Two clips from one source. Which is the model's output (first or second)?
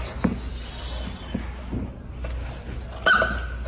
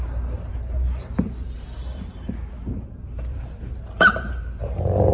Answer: second